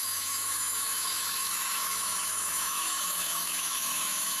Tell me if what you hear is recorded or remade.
remade